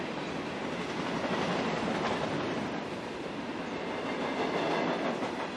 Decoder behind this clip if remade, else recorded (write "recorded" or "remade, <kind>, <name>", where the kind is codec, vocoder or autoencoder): recorded